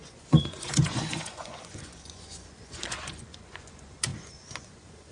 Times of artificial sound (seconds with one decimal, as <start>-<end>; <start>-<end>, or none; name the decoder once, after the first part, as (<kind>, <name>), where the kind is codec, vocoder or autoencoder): 0.0-5.1 (vocoder, Vocos)